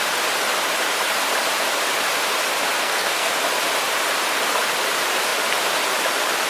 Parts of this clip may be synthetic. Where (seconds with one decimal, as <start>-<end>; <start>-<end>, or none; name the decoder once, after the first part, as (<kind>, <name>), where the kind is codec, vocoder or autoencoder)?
2.8-3.3 (codec, SNAC)